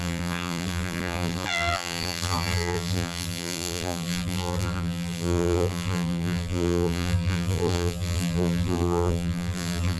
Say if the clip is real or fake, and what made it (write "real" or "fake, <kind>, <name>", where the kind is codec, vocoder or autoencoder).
fake, vocoder, BigVGAN v2